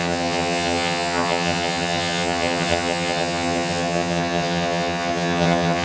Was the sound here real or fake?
fake